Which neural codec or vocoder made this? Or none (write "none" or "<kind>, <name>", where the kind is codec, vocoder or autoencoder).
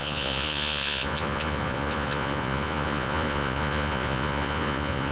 vocoder, Vocos